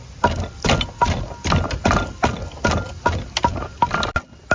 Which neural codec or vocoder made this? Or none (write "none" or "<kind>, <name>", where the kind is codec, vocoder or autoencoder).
none